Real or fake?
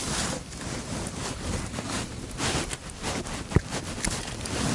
fake